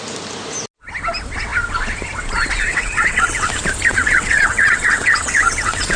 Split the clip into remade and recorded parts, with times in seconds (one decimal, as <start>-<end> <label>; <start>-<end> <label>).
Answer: 0.0-2.7 recorded; 2.7-3.5 remade; 3.5-3.9 recorded; 3.9-6.0 remade